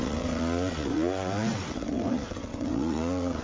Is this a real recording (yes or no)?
no